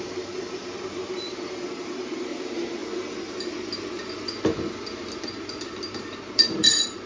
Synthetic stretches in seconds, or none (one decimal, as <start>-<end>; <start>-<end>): 0.0-2.8; 5.2-7.1